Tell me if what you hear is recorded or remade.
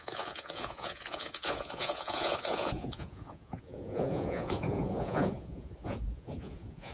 remade